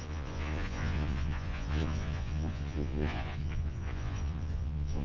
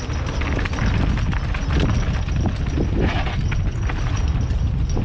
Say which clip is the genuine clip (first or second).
second